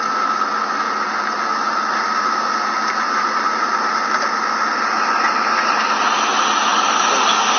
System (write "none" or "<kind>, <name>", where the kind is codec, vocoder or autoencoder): none